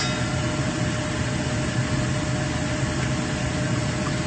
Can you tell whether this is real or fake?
real